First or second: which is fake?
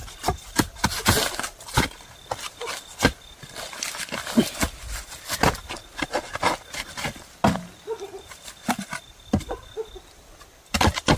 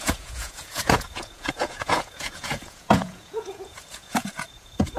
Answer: second